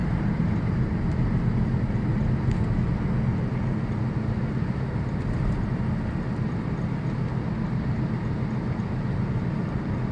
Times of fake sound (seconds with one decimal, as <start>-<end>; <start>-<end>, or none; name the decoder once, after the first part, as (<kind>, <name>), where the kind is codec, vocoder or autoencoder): 0.0-0.8 (vocoder, BigVGAN v2)